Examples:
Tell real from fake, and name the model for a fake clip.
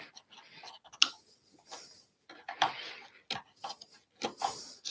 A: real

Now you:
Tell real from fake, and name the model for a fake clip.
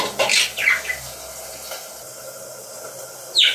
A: real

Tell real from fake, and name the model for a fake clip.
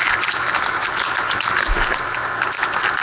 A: real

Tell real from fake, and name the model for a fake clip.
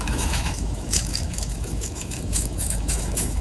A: fake, autoencoder, DAC-VAE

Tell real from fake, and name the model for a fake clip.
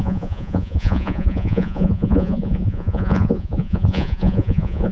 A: fake, vocoder, Vocos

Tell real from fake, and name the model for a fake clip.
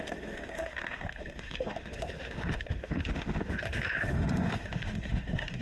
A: fake, autoencoder, DAC-VAE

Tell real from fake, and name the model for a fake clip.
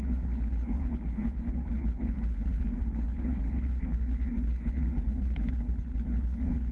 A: fake, codec, HILCodec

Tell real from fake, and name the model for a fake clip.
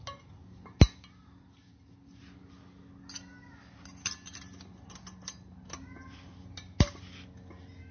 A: real